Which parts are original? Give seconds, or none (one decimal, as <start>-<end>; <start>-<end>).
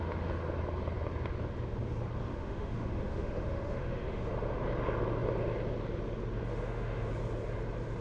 0.0-2.3; 4.3-6.5; 7.1-8.0